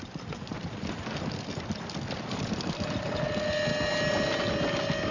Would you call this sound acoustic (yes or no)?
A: yes